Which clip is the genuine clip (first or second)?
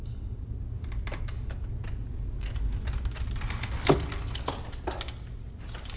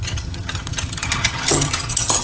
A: first